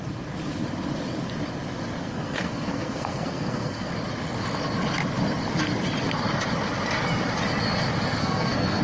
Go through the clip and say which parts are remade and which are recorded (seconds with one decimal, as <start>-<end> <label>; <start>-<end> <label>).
0.0-2.0 recorded; 2.0-3.9 remade; 3.9-8.2 recorded; 8.2-8.8 remade